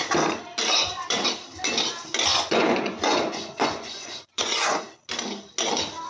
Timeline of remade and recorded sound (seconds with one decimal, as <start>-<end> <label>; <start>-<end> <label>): 0.0-0.7 recorded; 0.7-1.3 remade; 1.3-2.3 recorded; 2.3-4.8 remade; 4.8-6.1 recorded